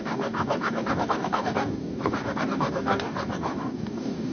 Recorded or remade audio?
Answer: remade